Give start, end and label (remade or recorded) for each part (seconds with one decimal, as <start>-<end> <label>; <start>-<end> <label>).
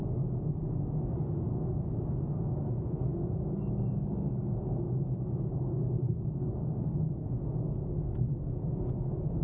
0.0-9.4 remade